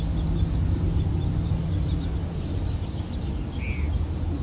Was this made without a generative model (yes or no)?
yes